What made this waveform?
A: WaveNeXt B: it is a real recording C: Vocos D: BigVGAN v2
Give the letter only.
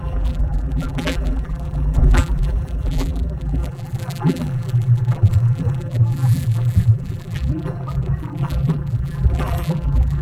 D